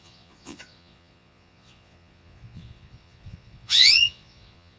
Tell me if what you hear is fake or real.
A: fake